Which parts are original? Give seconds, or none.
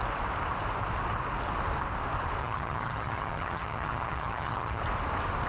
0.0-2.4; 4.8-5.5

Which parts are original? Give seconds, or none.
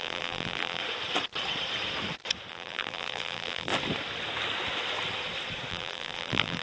0.8-2.5; 3.7-5.7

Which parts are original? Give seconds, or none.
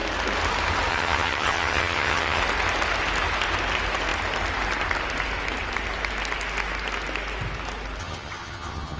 0.0-0.9; 2.4-8.0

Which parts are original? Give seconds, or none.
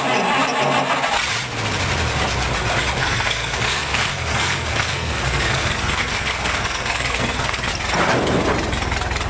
0.0-3.0; 7.7-9.3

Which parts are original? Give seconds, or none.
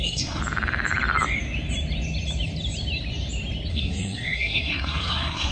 0.4-3.7